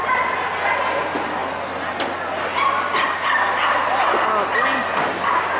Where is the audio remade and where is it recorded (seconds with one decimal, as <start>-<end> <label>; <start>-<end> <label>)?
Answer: 0.0-5.6 recorded